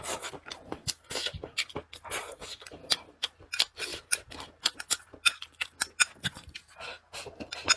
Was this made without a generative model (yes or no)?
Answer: yes